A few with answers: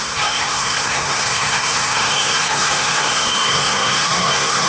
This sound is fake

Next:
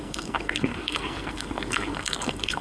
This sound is fake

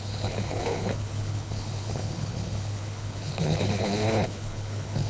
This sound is fake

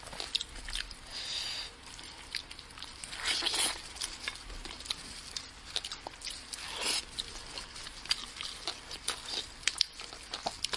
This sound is real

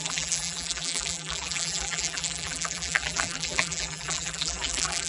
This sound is fake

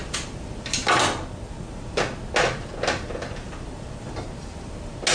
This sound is real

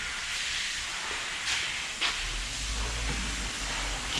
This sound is real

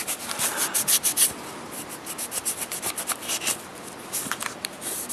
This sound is real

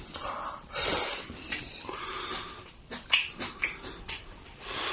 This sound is fake